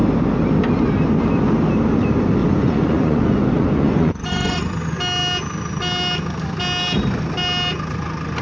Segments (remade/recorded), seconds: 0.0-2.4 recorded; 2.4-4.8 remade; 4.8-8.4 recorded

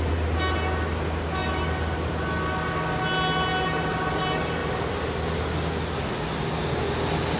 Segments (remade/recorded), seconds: 0.0-7.4 recorded

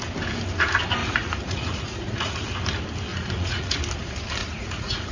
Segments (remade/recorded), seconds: 0.0-1.0 recorded; 1.0-2.5 remade; 2.5-3.1 recorded; 3.1-3.7 remade; 3.7-4.4 recorded; 4.4-5.1 remade

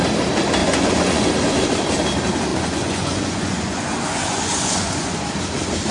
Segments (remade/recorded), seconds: 0.0-0.6 recorded; 0.6-1.3 remade; 1.3-2.5 recorded; 2.5-5.3 remade; 5.3-5.9 recorded